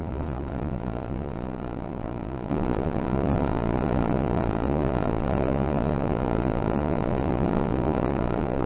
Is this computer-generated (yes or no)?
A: yes